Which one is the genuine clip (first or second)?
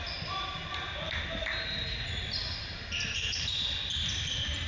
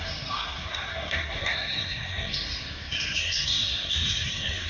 first